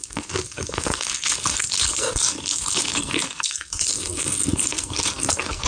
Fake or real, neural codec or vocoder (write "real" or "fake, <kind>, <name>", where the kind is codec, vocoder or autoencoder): fake, codec, SNAC